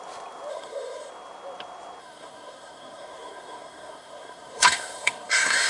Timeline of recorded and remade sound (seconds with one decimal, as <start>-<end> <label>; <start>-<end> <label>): 0.0-0.5 recorded; 0.5-1.1 remade; 1.1-2.0 recorded; 2.0-5.7 remade